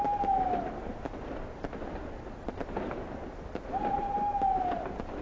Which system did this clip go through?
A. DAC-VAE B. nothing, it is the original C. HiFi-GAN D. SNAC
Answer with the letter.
B